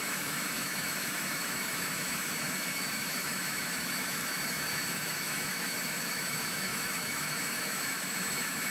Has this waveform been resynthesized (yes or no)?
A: yes